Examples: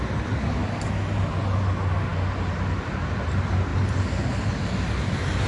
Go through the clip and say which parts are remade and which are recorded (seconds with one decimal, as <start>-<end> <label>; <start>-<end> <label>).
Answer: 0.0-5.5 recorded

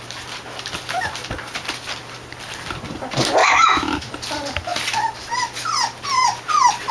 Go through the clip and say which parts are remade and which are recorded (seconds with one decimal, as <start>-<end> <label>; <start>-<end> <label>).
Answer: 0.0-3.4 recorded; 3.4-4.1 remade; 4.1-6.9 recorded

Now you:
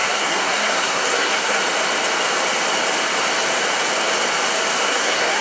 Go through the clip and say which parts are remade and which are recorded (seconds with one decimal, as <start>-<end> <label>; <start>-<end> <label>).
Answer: 0.0-1.6 remade; 1.6-4.8 recorded; 4.8-5.4 remade

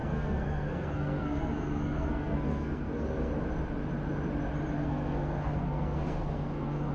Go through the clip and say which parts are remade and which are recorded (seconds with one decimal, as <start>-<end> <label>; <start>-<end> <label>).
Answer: 0.0-3.3 remade; 3.3-4.8 recorded; 4.8-6.9 remade

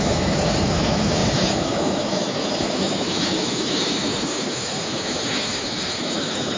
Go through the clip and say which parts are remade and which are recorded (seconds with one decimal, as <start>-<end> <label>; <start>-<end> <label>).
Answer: 0.0-6.6 remade

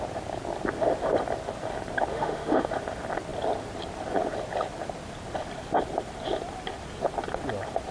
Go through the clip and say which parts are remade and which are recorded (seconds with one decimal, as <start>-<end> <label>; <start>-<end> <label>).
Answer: 0.0-2.1 recorded; 2.1-2.7 remade; 2.7-7.9 recorded